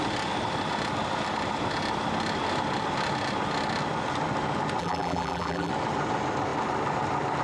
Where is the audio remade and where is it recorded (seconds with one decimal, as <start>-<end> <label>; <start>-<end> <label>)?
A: 0.0-4.8 recorded; 4.8-5.7 remade; 5.7-7.4 recorded